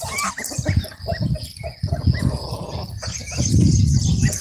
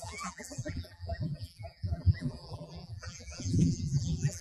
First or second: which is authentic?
first